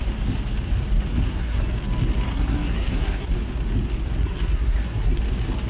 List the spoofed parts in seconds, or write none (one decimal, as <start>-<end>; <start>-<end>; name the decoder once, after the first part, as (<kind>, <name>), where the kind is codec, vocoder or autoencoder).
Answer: 1.1-1.6 (codec, SNAC); 2.3-3.3; 4.2-5.2